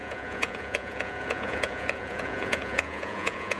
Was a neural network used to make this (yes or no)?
yes